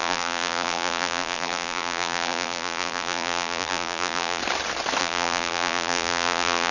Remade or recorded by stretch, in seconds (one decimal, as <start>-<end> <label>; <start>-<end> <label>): 0.0-4.4 remade; 4.4-5.0 recorded; 5.0-6.7 remade